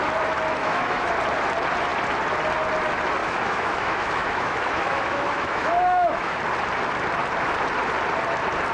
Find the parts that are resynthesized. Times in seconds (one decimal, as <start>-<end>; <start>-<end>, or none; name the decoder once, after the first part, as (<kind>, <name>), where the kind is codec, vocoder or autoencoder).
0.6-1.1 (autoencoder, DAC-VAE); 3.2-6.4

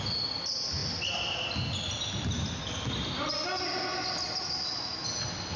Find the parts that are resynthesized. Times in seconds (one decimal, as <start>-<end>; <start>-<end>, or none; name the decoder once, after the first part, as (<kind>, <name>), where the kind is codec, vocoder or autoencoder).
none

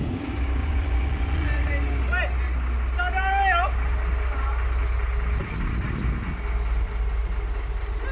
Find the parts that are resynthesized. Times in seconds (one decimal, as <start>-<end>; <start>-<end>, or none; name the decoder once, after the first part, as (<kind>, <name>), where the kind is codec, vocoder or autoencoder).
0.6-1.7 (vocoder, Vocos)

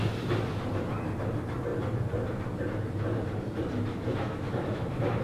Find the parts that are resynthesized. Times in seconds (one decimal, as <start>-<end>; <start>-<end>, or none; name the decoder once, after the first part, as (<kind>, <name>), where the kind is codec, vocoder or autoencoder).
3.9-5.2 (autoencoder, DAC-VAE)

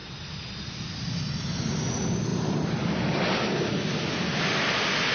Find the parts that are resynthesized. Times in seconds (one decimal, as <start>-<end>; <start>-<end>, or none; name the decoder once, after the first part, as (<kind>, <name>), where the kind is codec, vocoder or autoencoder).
2.3-3.7 (vocoder, BigVGAN v2)